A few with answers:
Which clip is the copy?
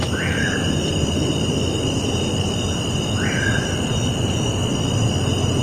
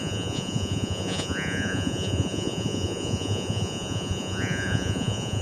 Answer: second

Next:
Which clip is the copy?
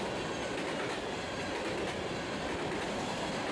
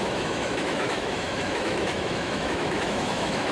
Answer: second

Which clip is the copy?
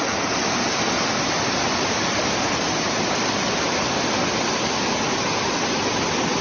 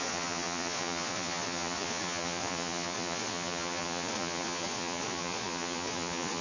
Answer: second